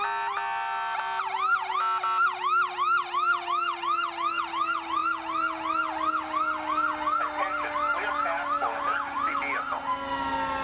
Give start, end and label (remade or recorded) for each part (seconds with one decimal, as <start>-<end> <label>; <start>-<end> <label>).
0.0-10.6 recorded